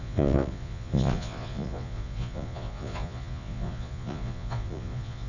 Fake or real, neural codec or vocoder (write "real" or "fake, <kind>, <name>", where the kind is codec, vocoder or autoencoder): fake, vocoder, Vocos